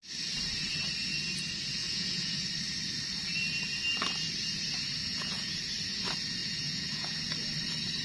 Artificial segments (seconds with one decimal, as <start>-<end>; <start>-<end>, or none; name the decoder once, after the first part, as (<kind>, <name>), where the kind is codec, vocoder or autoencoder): 1.8-2.5 (vocoder, Vocos); 5.0-5.6; 6.4-7.2